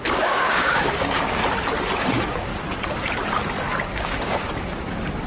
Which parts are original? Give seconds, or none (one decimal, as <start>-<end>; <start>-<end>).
1.4-2.0; 2.5-3.8